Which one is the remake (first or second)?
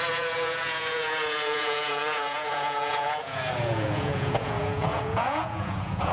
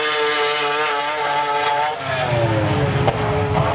first